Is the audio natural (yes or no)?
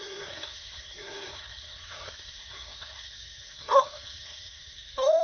no